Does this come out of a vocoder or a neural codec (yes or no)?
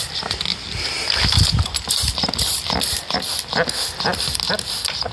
no